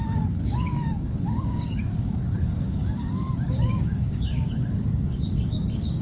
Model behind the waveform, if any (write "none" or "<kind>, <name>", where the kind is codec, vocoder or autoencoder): codec, DAC